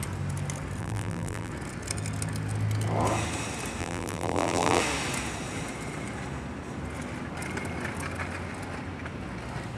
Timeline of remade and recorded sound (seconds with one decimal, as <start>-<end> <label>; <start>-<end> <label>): 0.0-0.8 recorded; 0.8-1.5 remade; 1.5-3.8 recorded; 3.8-4.8 remade; 4.8-9.8 recorded